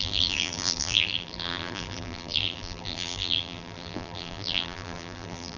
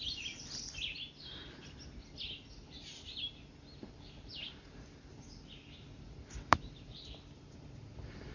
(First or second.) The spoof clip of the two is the first